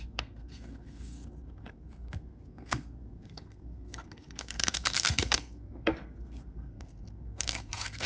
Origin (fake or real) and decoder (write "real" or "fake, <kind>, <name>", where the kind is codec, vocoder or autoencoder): fake, codec, SNAC